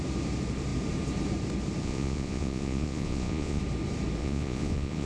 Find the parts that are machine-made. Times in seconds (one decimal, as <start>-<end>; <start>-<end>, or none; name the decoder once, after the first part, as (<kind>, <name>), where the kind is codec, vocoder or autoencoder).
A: 1.8-3.6 (vocoder, Vocos); 4.2-5.1